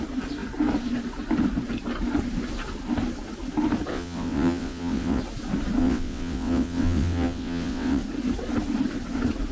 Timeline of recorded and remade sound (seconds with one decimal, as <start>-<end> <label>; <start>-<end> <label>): 0.0-3.9 recorded; 3.9-5.2 remade; 5.2-5.8 recorded; 5.8-8.0 remade; 8.0-9.5 recorded